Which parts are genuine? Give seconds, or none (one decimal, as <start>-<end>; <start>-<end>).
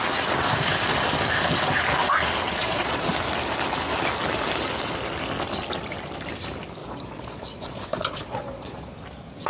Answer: 0.0-2.6; 3.1-6.8; 8.9-9.5